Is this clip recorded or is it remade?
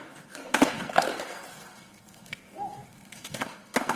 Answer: remade